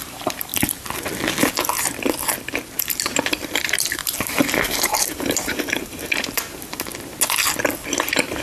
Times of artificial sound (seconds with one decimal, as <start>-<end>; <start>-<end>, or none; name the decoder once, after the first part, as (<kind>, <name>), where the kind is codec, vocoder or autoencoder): 0.0-0.5 (vocoder, BigVGAN v2); 2.8-6.9; 7.9-8.4